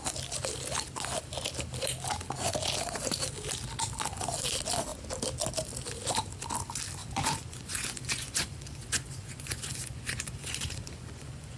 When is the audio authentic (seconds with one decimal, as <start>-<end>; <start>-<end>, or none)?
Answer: 0.0-7.0